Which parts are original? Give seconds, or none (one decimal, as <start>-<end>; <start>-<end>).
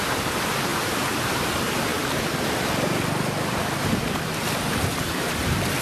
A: 0.0-0.7; 1.3-1.9